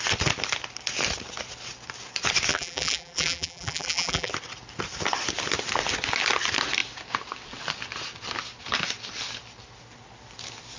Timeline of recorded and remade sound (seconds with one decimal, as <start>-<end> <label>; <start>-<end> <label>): 0.0-2.5 recorded; 2.5-4.3 remade; 4.3-10.8 recorded